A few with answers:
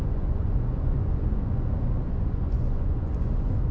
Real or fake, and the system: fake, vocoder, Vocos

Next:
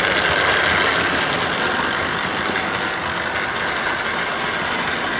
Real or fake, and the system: real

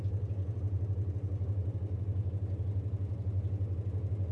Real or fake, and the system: real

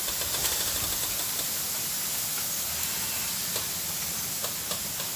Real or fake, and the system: real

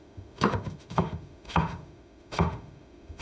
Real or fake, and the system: fake, autoencoder, DAC-VAE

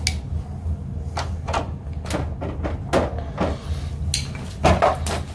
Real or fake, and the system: real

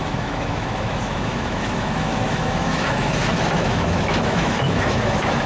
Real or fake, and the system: fake, autoencoder, DAC-VAE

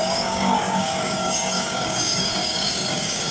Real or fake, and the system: fake, codec, DAC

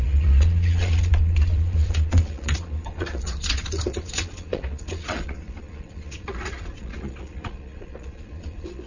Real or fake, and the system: fake, vocoder, Vocos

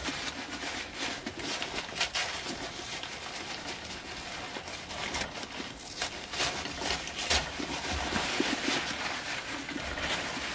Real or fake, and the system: real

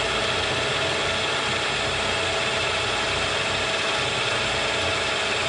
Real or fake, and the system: real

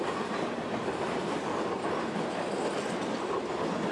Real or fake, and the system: real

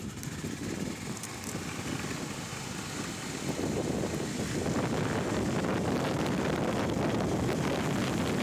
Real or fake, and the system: real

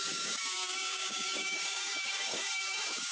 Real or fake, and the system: fake, codec, DAC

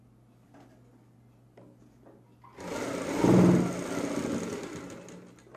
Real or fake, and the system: real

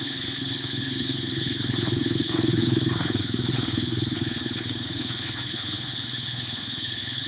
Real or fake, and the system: fake, codec, HILCodec